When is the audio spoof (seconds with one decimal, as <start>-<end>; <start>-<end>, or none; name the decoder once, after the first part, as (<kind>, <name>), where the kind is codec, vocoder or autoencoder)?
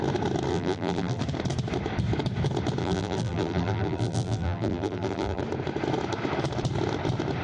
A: 0.5-1.2 (vocoder, BigVGAN v2); 2.8-5.4